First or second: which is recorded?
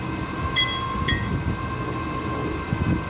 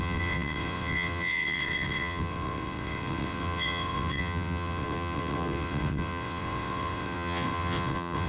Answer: first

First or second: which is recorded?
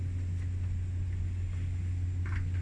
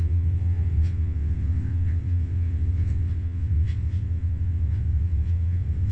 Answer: first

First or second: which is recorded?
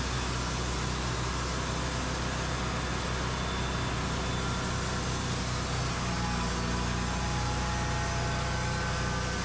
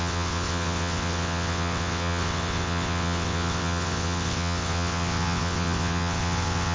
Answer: first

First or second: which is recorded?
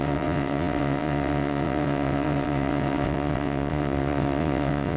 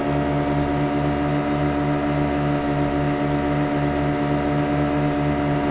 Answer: second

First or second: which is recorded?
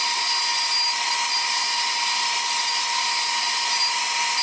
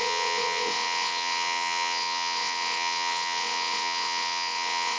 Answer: first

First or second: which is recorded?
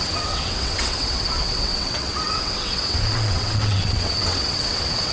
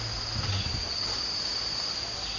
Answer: second